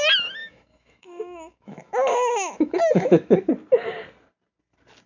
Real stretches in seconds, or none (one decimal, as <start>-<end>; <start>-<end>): 0.0-0.4; 3.5-5.1